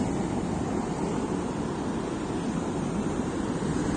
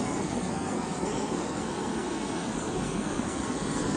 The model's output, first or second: second